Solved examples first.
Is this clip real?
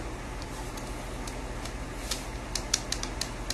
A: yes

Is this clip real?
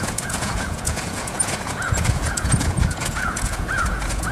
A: no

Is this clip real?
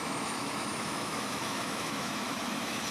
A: no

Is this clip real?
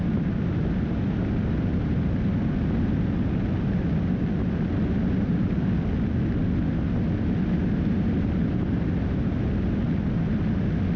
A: yes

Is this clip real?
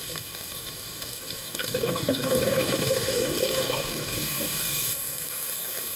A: no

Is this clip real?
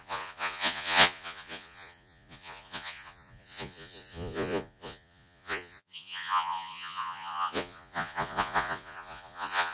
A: no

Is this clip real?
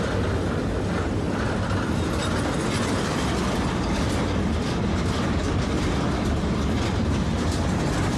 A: yes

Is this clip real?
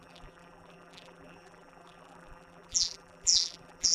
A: no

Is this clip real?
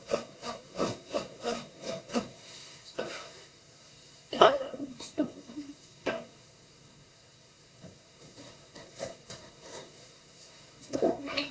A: no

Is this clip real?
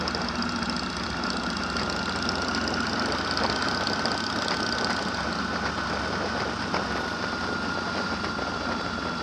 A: yes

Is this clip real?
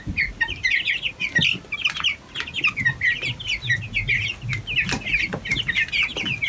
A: yes